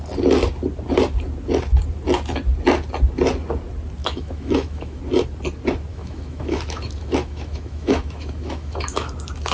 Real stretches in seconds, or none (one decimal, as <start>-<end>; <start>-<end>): 0.0-4.0; 5.0-5.9; 9.1-9.5